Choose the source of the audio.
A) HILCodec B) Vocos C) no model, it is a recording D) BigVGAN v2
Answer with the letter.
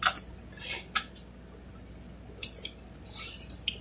C